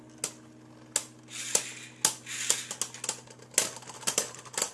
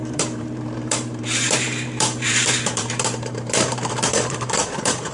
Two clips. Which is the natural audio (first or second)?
first